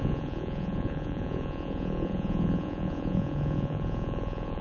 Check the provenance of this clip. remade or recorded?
remade